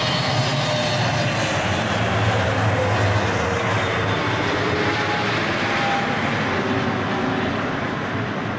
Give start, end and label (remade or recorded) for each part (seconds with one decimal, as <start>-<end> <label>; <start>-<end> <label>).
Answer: 0.0-8.6 recorded